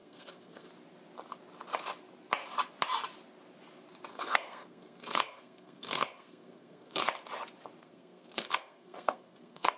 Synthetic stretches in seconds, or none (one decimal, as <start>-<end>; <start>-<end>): 0.0-0.7; 4.1-7.0; 7.8-9.8